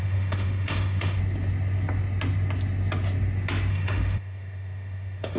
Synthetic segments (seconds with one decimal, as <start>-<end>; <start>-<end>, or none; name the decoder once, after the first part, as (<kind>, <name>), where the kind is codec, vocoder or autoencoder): 0.0-1.2 (autoencoder, DAC-VAE); 3.7-5.4